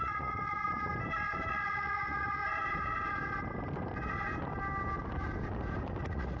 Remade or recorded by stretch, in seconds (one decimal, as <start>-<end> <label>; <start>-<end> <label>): 0.0-0.9 remade; 0.9-1.5 recorded; 1.5-2.4 remade; 2.4-6.0 recorded; 6.0-6.4 remade